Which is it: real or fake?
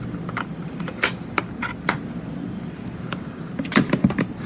real